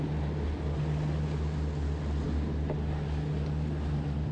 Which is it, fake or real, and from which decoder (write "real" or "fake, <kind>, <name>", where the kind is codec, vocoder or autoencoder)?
real